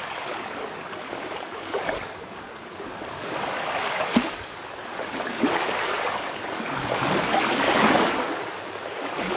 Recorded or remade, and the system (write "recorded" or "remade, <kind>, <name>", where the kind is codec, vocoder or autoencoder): remade, codec, DAC